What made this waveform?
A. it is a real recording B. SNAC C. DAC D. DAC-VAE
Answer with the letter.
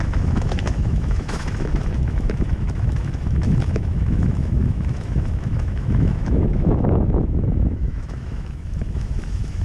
D